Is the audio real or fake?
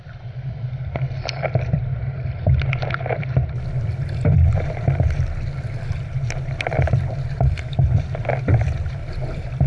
fake